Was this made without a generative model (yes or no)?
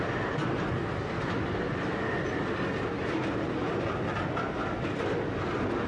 yes